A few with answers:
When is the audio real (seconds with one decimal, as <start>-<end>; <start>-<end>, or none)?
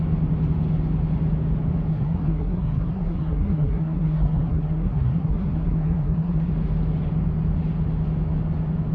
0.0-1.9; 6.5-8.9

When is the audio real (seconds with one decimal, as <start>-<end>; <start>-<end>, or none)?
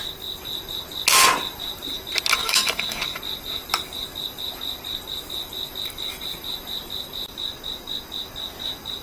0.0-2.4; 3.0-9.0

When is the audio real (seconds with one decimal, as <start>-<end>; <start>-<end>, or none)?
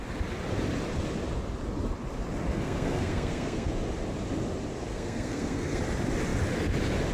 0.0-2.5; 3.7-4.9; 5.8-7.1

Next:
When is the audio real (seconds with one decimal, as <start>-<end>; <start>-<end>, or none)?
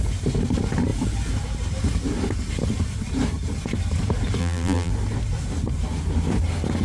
0.0-4.4; 4.9-6.8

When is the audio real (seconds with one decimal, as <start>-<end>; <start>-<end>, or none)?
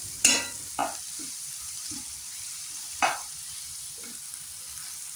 0.0-0.8; 3.9-5.2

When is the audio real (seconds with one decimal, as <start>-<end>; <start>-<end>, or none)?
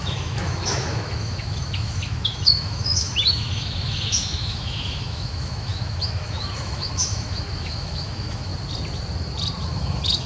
8.5-9.7